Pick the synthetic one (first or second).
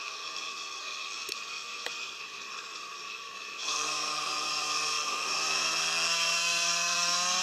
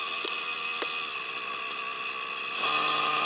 first